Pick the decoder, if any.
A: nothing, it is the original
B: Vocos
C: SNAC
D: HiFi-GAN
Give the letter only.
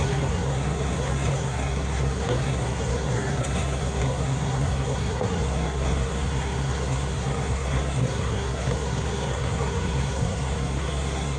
C